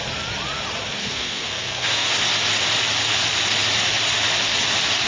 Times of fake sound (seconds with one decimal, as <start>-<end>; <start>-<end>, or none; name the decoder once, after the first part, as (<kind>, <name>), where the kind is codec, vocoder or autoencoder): 1.0-2.1 (codec, SNAC)